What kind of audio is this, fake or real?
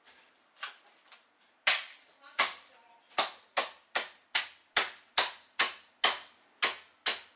real